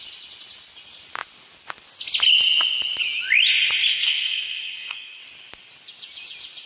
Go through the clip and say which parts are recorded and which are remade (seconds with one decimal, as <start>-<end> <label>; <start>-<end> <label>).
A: 0.0-3.9 recorded; 3.9-5.2 remade; 5.2-6.7 recorded